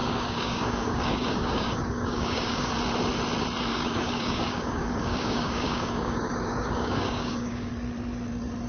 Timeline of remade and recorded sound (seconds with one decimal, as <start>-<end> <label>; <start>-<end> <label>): 0.0-2.7 remade; 2.7-3.7 recorded; 3.7-7.7 remade; 7.7-8.7 recorded